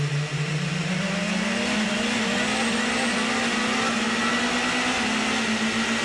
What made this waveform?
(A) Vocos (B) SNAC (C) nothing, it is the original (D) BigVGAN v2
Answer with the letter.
C